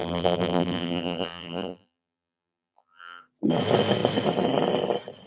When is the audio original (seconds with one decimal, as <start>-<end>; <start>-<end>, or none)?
3.2-5.3